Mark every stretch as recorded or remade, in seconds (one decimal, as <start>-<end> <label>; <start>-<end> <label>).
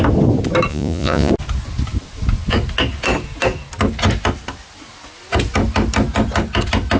0.0-0.7 recorded; 0.7-1.3 remade; 1.3-7.0 recorded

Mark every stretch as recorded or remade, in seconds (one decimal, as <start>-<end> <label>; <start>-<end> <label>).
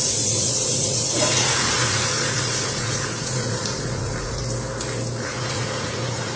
0.0-4.4 remade; 4.4-5.2 recorded; 5.2-6.4 remade